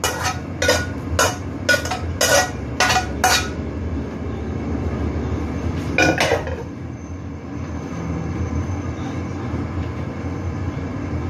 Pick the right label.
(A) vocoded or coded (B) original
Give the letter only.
B